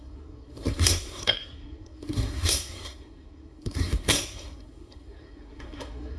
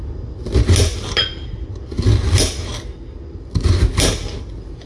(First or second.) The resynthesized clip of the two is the first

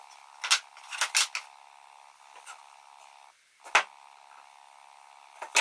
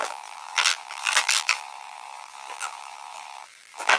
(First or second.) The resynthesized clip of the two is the second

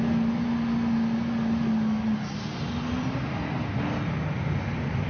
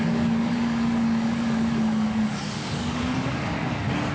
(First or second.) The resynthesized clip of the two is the second